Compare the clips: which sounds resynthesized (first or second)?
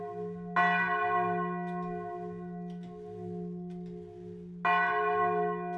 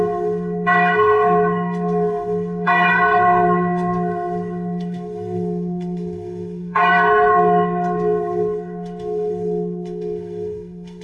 second